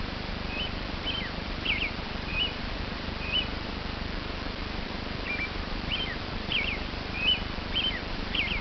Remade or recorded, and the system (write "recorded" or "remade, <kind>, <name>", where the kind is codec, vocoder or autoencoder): remade, vocoder, BigVGAN v2